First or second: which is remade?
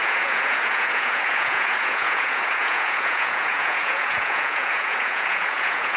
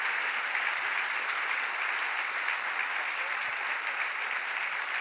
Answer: first